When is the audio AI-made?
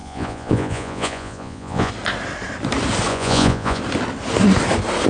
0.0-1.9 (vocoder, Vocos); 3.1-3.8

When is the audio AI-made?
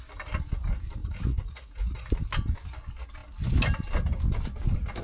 1.0-2.1 (vocoder, Vocos)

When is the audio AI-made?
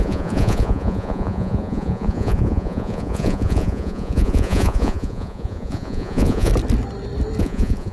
0.0-6.5 (vocoder, Vocos); 7.4-7.9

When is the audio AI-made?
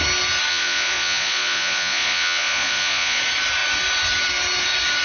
0.5-3.2 (vocoder, Vocos)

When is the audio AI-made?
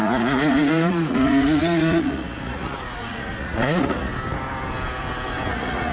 0.0-4.1 (vocoder, Vocos); 5.5-5.9